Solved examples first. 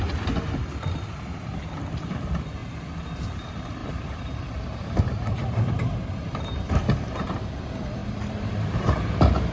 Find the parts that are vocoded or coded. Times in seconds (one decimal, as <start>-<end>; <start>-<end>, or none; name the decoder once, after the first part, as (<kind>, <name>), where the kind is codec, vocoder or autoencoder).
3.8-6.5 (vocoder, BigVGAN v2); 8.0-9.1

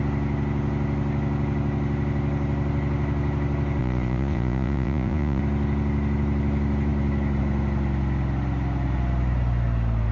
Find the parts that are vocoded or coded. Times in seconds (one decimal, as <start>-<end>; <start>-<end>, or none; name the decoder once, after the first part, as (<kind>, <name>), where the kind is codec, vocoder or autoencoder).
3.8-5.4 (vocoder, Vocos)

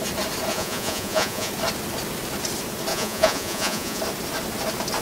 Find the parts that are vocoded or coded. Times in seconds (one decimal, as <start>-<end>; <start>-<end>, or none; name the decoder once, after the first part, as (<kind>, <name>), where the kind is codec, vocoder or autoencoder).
0.5-1.5 (vocoder, Vocos); 2.9-4.0

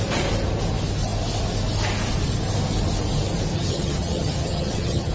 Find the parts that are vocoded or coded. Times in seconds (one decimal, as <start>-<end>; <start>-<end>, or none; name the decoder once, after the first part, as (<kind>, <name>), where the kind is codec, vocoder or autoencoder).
3.5-5.1 (vocoder, HiFi-GAN)

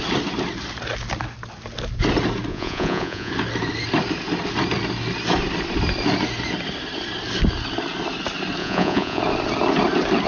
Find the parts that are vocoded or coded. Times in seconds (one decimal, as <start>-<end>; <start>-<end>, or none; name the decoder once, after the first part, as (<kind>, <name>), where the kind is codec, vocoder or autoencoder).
2.5-3.3 (vocoder, Vocos); 8.6-9.2

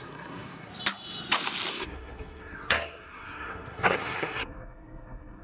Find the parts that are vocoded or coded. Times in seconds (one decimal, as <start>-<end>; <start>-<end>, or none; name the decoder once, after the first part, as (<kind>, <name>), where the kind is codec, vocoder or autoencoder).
0.0-0.7 (codec, SNAC); 1.7-5.4